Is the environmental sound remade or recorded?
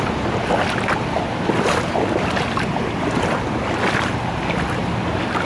recorded